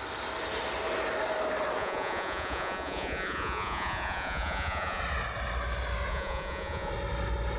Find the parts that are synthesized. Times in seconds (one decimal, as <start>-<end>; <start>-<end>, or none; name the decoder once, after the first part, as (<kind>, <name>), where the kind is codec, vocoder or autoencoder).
1.8-5.0 (vocoder, Vocos); 6.1-6.9